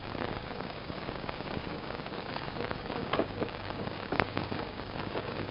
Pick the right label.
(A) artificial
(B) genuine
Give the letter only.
A